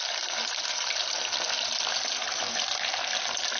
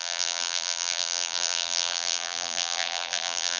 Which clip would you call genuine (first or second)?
first